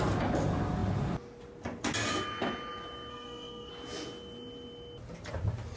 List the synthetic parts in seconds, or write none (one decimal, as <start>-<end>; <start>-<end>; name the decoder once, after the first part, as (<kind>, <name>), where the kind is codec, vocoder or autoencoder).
3.1-3.7 (codec, SNAC)